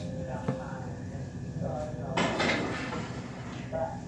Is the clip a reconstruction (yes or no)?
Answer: no